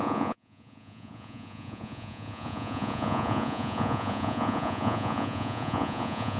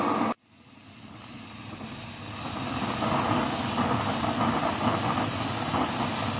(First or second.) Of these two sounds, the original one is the second